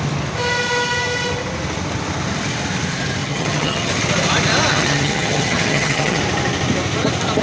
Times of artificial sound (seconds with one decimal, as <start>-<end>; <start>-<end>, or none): 3.2-3.9; 4.7-6.2